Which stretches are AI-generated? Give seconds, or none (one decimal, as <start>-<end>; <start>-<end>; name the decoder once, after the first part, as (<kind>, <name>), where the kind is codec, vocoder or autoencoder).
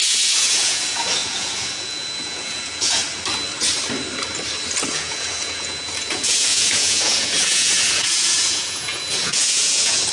0.0-3.0 (vocoder, Vocos); 4.9-10.1